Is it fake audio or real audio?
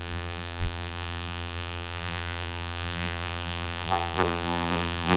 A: fake